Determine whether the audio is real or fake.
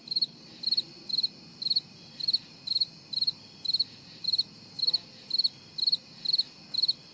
real